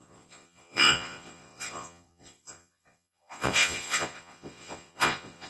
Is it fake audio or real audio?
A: fake